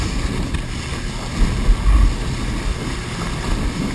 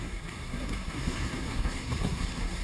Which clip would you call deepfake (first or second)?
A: second